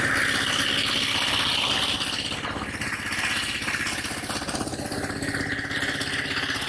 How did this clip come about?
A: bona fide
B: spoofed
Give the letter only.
A